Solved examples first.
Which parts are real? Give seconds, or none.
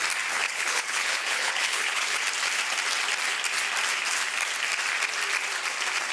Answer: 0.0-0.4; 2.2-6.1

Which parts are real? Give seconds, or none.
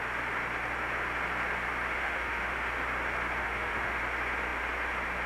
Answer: 0.0-2.0; 2.7-3.4; 4.0-5.3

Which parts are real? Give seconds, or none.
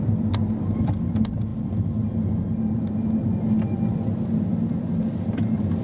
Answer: 0.0-5.8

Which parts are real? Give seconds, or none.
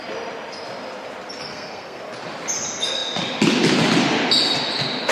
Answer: 0.0-1.5; 2.0-5.1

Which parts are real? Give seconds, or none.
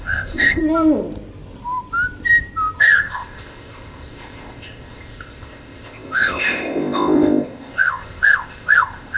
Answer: 0.6-2.8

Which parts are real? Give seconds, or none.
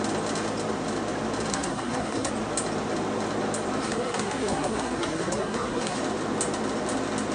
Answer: 0.0-1.5; 2.3-3.8; 6.0-7.3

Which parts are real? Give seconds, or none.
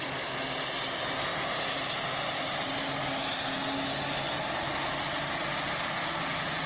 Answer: 0.0-6.7